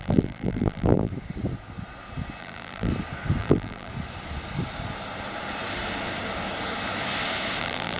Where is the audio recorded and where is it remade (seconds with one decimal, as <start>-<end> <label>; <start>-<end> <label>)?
0.0-1.1 remade; 1.1-2.4 recorded; 2.4-2.9 remade; 2.9-3.4 recorded; 3.4-3.9 remade; 3.9-7.6 recorded; 7.6-8.0 remade